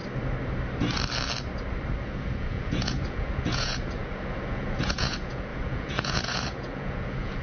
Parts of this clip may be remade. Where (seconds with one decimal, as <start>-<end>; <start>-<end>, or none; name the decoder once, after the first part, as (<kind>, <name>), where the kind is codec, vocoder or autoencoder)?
2.0-7.4 (vocoder, Vocos)